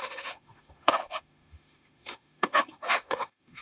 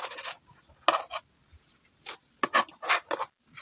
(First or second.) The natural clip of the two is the second